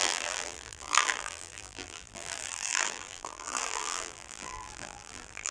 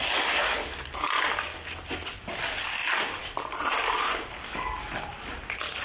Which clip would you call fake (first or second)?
first